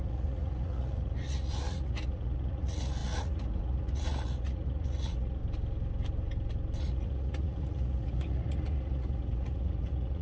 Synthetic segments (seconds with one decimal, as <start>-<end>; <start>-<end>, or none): 0.0-5.4; 6.8-10.2